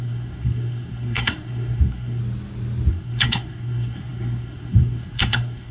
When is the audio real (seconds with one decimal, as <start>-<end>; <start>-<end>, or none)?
2.2-2.9